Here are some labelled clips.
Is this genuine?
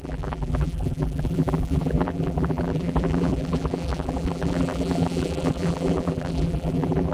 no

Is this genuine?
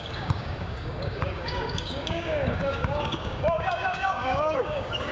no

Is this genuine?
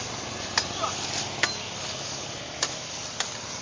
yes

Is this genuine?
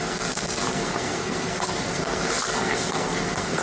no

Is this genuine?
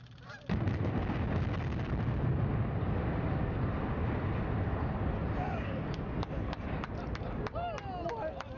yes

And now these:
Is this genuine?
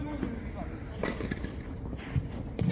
yes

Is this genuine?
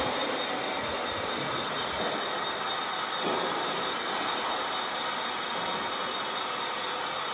yes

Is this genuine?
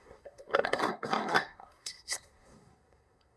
no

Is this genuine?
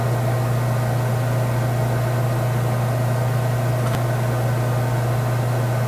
yes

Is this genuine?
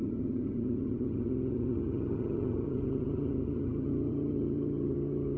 no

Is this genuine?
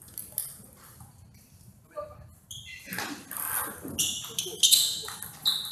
yes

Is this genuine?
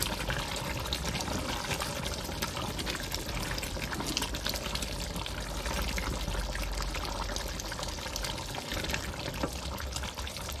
yes